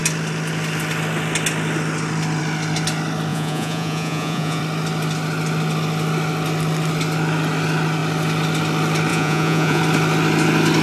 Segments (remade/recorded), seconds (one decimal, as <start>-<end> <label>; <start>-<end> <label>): 0.0-3.3 recorded; 3.3-4.6 remade; 4.6-9.1 recorded; 9.1-9.8 remade; 9.8-10.8 recorded